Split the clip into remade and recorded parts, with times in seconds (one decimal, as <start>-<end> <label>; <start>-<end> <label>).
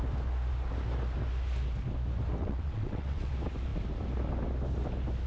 0.0-2.4 recorded; 2.4-3.3 remade; 3.3-5.3 recorded